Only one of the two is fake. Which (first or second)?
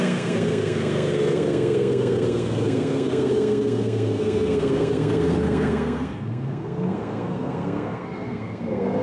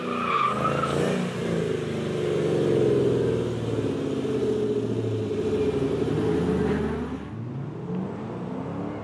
first